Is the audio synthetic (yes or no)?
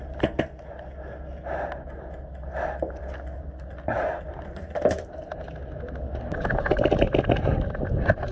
no